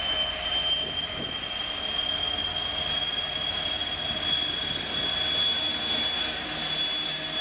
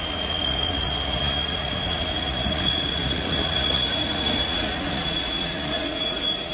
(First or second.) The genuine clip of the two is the first